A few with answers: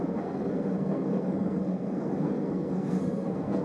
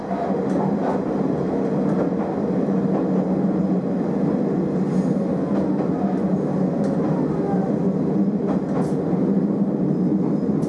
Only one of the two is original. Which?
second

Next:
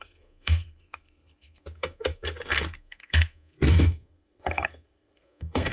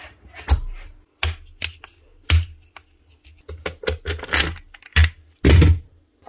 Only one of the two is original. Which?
second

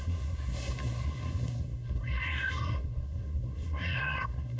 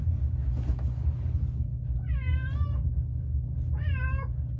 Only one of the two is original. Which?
second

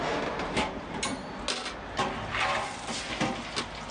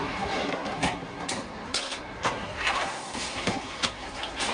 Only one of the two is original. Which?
first